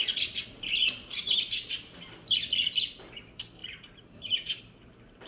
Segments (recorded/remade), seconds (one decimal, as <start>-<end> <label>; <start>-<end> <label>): 0.0-0.8 recorded; 0.8-2.1 remade; 2.1-3.6 recorded; 3.6-4.6 remade; 4.6-5.3 recorded